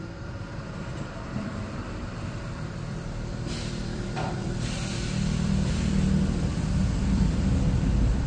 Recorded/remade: remade